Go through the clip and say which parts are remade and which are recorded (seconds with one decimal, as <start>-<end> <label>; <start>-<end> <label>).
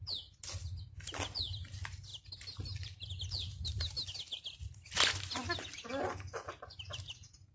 0.0-7.5 recorded